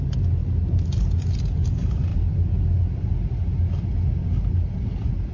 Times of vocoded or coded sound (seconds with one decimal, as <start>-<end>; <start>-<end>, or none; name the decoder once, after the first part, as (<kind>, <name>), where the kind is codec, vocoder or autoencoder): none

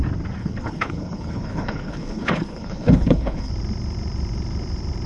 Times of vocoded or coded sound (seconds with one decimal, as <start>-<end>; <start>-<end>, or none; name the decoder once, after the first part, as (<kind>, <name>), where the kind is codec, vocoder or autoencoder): 0.4-3.5 (codec, HILCodec)

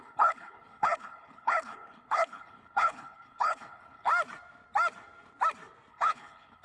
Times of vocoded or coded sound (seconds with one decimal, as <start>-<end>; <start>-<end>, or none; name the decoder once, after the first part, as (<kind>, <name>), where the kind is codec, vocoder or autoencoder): 0.0-4.1 (codec, HILCodec); 5.9-6.6